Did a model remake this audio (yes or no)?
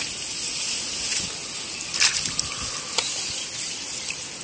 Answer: no